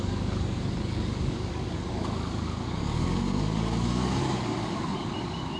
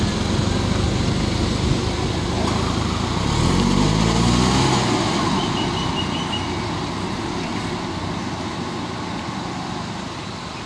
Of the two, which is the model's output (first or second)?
first